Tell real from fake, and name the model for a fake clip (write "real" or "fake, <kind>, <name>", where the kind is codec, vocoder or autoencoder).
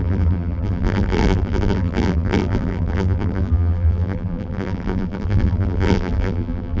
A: fake, vocoder, BigVGAN v2